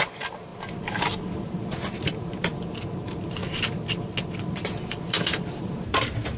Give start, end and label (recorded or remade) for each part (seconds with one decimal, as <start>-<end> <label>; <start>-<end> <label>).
0.0-0.5 remade; 0.5-1.5 recorded; 1.5-3.4 remade; 3.4-4.2 recorded; 4.2-6.4 remade